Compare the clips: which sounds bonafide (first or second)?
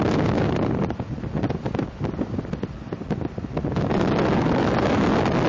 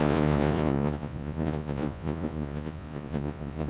first